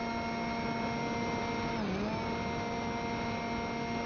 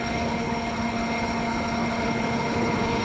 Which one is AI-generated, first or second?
second